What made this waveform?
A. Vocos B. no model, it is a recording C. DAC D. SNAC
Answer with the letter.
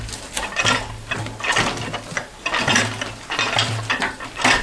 B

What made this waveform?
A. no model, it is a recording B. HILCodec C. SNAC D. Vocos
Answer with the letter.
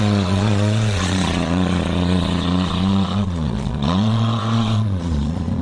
D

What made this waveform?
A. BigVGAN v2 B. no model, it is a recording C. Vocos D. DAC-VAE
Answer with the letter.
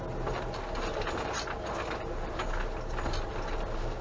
B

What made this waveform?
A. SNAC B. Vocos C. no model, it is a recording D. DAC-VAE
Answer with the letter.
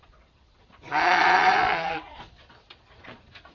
B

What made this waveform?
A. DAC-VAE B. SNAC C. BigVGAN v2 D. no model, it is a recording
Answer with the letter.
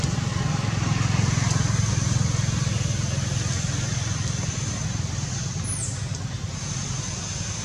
D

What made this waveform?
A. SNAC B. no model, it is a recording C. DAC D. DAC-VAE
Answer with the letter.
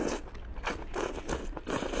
B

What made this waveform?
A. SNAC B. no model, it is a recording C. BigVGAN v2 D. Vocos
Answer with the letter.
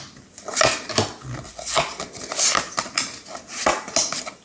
B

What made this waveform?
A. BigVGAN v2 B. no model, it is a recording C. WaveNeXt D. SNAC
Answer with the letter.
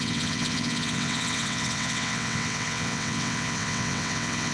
C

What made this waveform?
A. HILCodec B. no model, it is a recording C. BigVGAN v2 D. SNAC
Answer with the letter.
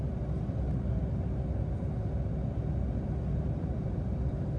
C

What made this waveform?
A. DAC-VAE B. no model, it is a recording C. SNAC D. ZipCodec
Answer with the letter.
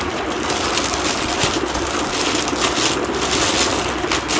B